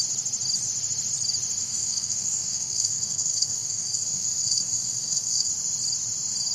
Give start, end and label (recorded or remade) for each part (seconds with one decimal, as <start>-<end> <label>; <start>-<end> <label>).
0.0-1.6 recorded; 1.6-5.5 remade; 5.5-6.5 recorded